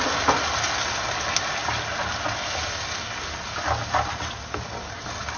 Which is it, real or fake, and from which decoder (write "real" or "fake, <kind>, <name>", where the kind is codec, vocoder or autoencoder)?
real